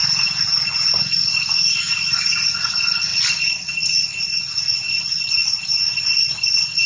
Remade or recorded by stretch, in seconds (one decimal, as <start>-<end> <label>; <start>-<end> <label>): 0.0-1.0 recorded; 1.0-3.1 remade; 3.1-6.9 recorded